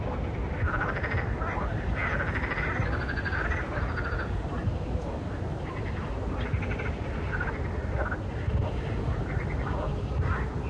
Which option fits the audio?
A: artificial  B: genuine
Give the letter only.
B